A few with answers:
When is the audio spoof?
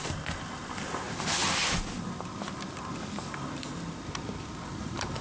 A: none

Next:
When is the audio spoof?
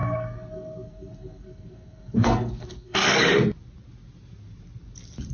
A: 0.0-3.2 (codec, SNAC)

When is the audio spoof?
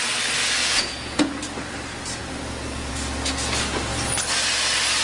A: 0.6-1.3 (vocoder, Vocos)